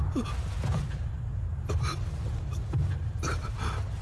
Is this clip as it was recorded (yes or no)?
no